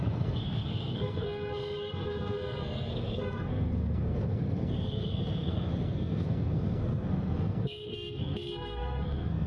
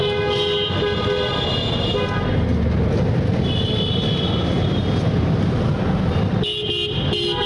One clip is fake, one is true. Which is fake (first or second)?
first